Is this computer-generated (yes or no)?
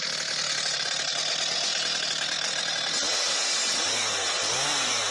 no